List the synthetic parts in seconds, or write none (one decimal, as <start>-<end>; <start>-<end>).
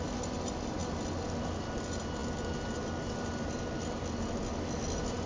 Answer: none